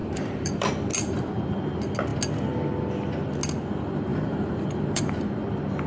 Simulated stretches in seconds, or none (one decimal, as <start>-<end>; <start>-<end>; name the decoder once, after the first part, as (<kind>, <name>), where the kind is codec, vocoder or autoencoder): 0.0-0.7 (vocoder, BigVGAN v2); 4.1-5.3